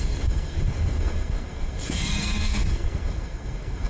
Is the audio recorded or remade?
remade